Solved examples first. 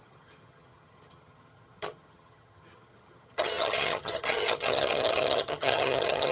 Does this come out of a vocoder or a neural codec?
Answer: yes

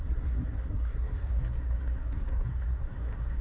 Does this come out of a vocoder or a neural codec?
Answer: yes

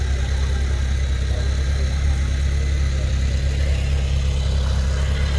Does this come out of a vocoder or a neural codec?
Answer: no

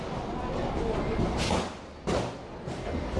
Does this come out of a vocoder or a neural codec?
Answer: no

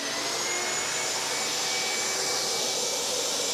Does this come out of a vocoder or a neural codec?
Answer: no